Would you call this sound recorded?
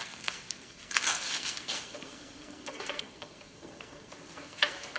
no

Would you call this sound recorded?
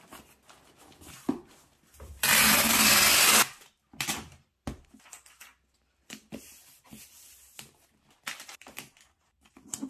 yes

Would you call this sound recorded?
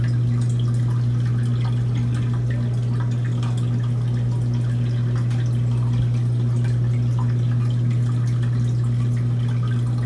yes